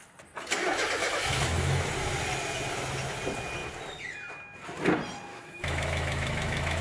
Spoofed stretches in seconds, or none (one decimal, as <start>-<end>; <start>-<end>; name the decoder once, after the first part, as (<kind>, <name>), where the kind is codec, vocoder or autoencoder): 1.0-1.9 (autoencoder, DAC-VAE); 5.3-6.8